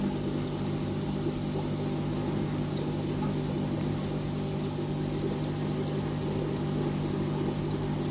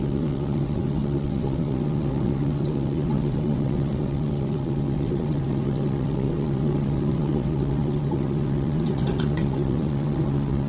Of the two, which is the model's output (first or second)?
second